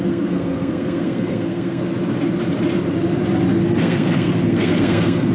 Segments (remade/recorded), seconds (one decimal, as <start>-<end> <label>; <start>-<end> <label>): 0.0-1.8 remade; 1.8-3.8 recorded; 3.8-5.3 remade